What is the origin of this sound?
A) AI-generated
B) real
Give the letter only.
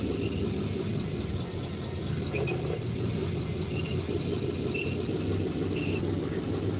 B